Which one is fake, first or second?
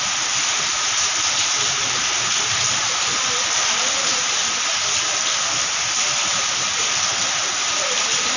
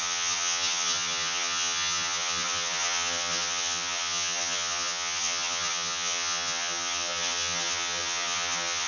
second